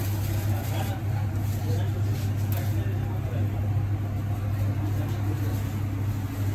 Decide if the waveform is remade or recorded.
recorded